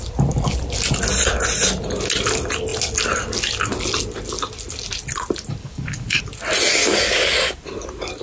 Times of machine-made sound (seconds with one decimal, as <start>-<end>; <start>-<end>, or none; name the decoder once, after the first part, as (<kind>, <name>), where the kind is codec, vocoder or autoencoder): 5.6-6.2 (codec, DAC); 6.8-7.5